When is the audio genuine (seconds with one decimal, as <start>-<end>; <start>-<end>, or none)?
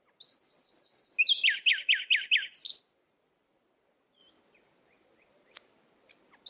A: 0.0-6.5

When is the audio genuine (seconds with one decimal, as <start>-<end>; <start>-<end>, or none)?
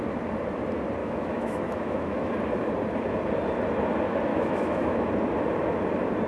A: 0.0-1.0; 2.3-4.3; 5.1-6.3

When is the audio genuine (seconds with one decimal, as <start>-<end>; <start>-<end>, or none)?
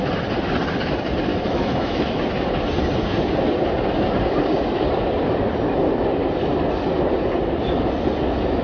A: 0.0-1.3; 2.2-8.6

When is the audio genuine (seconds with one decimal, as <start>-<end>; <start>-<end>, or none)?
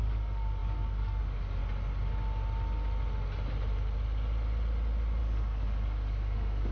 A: 1.6-5.2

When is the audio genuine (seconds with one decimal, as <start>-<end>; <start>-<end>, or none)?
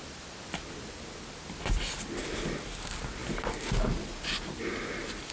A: 0.0-5.3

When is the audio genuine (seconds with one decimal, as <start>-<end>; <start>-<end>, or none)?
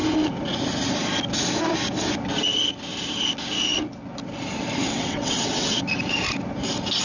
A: 0.0-4.9; 5.8-7.0